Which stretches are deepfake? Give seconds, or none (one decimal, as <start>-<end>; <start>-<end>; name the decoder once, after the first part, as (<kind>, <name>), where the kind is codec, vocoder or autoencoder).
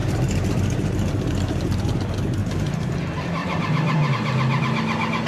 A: 0.0-1.8 (vocoder, BigVGAN v2); 2.4-2.9; 3.4-4.1